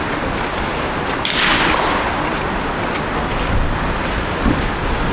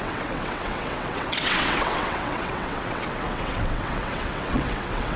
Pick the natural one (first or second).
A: first